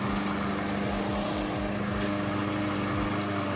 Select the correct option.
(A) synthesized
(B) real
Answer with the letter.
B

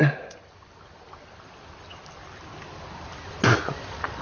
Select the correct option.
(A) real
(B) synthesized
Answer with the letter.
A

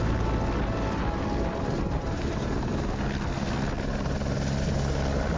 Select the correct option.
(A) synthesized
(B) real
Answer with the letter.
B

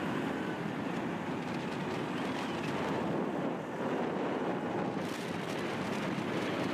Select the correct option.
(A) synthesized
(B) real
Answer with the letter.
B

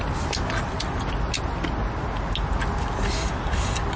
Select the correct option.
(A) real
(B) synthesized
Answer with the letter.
A